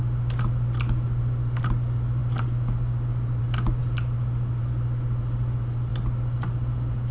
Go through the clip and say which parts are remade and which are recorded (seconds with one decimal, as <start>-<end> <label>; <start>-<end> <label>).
0.0-7.1 recorded